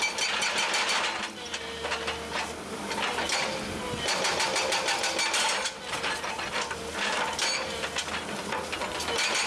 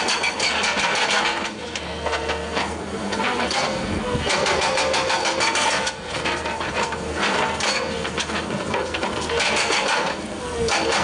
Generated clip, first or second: second